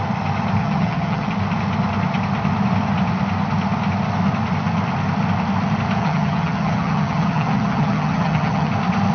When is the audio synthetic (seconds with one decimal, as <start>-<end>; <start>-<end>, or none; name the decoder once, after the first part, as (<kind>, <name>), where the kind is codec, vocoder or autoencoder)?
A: 0.6-1.3 (vocoder, HiFi-GAN); 6.0-8.7